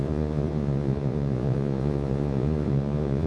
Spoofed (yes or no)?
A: yes